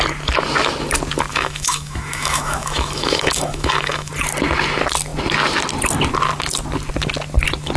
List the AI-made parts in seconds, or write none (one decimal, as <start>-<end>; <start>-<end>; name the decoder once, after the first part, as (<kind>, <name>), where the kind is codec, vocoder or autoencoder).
1.3-4.1 (autoencoder, DAC-VAE)